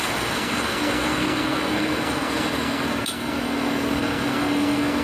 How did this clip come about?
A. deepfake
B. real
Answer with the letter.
A